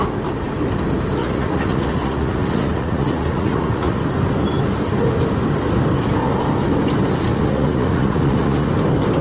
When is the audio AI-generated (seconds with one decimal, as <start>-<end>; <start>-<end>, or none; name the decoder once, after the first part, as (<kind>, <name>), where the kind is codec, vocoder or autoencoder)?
1.2-4.0 (vocoder, Vocos); 7.3-8.7